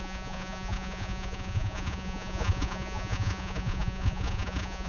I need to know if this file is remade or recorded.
remade